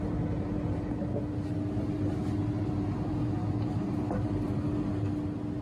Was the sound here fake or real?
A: real